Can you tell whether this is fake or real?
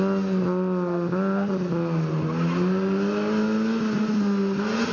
real